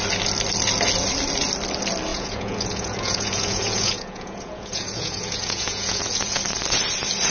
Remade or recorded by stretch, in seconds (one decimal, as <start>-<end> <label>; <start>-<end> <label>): 0.0-2.1 recorded; 2.1-6.4 remade; 6.4-7.3 recorded